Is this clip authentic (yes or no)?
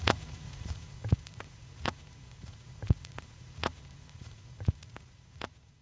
no